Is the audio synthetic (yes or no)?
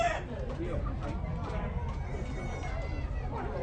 no